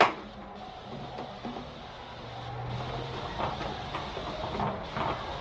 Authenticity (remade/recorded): recorded